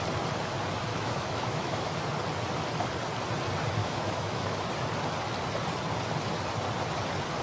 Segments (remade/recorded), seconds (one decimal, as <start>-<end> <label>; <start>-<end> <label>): 0.0-0.9 recorded; 0.9-2.0 remade; 2.0-3.8 recorded; 3.8-4.7 remade; 4.7-7.4 recorded